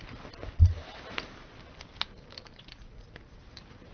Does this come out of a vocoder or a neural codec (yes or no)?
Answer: no